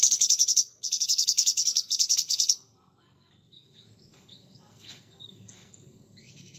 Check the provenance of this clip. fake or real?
fake